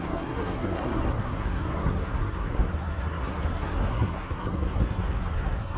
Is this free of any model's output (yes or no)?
no